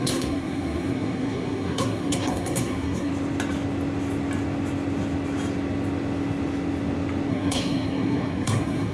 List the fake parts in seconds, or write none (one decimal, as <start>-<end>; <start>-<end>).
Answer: 0.0-3.1; 7.3-8.9